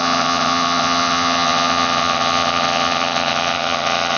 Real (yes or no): no